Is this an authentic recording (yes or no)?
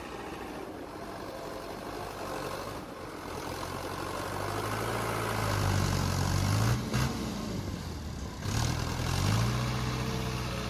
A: yes